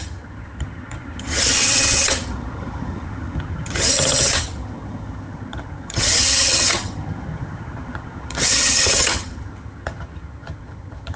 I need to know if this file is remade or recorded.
remade